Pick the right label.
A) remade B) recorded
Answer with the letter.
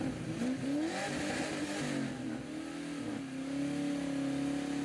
B